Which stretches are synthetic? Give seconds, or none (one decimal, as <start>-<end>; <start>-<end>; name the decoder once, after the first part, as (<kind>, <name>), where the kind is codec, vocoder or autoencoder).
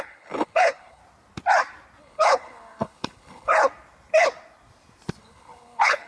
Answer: 0.0-1.0 (codec, HILCodec); 2.0-3.6; 5.2-6.1